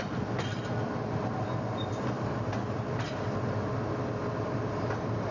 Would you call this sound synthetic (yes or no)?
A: no